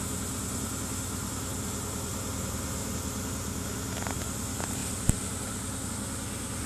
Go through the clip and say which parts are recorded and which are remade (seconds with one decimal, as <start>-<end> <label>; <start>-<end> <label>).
0.0-4.8 recorded; 4.8-5.9 remade; 5.9-6.7 recorded